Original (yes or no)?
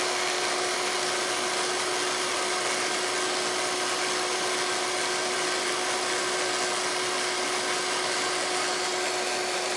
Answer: yes